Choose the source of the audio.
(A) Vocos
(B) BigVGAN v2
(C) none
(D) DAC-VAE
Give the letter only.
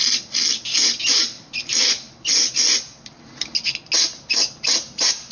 C